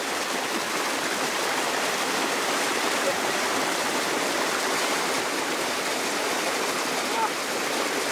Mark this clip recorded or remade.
remade